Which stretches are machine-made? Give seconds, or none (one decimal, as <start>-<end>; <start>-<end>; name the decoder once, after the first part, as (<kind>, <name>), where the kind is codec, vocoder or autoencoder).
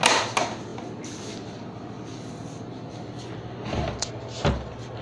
none